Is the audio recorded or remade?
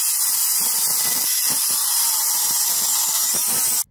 recorded